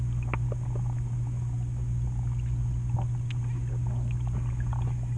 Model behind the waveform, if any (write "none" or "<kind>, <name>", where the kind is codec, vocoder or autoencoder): none